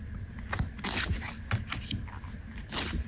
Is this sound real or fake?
real